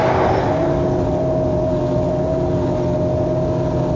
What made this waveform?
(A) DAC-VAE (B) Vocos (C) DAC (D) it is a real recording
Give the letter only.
D